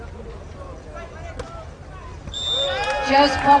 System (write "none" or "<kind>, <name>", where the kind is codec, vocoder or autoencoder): none